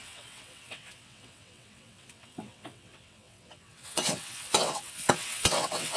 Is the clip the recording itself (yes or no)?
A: no